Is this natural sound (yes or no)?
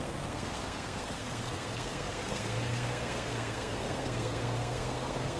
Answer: no